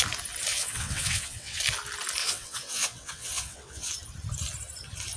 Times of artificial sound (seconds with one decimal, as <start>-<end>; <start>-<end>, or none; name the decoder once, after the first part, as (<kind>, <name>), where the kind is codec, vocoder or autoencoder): 0.5-1.6 (vocoder, WaveNeXt); 2.2-3.9